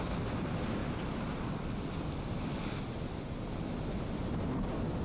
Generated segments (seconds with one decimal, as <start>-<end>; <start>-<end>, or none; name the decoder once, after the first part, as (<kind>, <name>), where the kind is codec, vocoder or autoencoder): 0.8-3.0 (vocoder, BigVGAN v2)